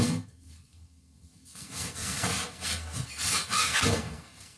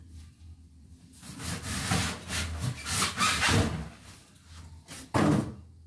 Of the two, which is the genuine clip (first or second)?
second